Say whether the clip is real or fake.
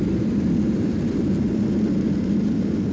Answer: real